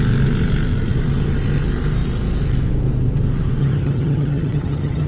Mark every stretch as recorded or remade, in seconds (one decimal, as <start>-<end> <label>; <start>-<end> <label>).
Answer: 0.0-3.6 recorded; 3.6-5.1 remade